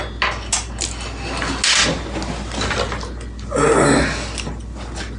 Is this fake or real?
real